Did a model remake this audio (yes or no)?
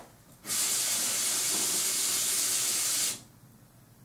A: no